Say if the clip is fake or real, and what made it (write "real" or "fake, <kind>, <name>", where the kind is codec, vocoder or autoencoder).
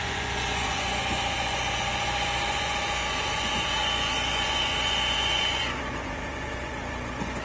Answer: fake, vocoder, Vocos